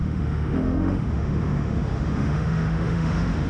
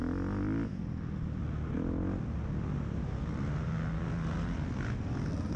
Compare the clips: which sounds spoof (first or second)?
first